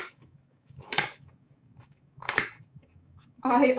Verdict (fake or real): fake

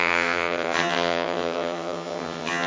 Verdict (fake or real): fake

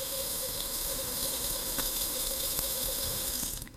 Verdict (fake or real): fake